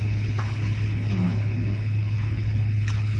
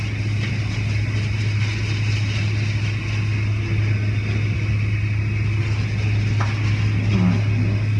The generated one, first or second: first